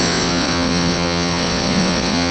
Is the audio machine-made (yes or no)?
yes